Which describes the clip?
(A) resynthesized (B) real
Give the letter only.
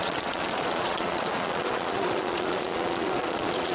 A